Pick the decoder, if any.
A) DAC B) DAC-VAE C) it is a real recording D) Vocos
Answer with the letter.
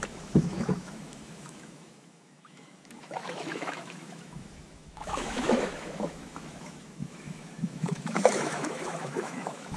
B